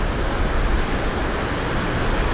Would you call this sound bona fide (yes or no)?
yes